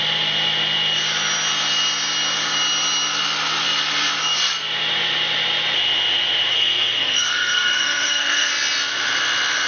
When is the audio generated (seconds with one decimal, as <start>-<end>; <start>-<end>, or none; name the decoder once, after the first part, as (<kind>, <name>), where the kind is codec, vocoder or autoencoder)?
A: 6.5-8.5 (codec, SNAC)